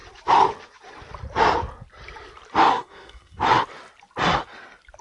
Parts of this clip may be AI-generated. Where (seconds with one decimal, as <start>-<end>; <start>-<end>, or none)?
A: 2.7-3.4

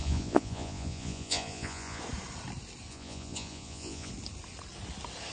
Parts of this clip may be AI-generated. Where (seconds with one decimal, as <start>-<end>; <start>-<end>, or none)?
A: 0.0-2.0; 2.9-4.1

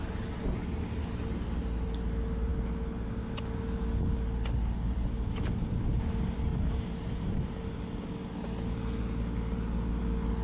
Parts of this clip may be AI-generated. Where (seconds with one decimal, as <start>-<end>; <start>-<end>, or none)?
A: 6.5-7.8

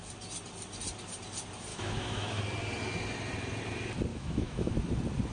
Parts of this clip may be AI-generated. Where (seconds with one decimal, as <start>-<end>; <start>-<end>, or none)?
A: 1.7-2.4; 4.1-4.7

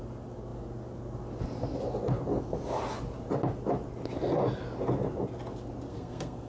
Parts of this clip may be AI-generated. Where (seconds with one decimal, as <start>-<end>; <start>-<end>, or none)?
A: 5.9-6.5

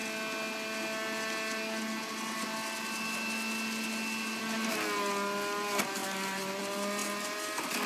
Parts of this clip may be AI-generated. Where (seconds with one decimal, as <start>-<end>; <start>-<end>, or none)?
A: 6.0-6.6